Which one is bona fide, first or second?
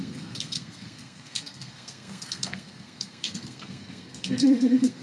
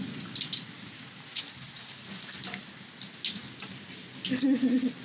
second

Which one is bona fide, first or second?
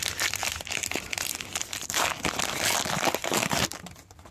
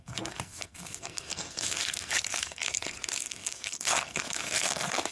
first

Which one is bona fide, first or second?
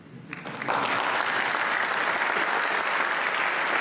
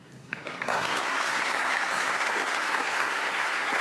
first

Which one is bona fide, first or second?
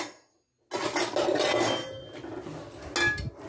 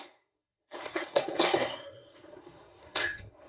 first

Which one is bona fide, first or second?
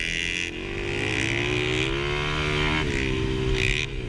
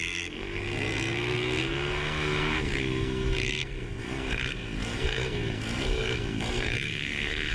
first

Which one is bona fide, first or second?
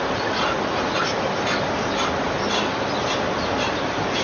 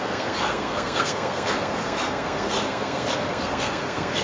first